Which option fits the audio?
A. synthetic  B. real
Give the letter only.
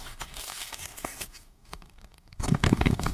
A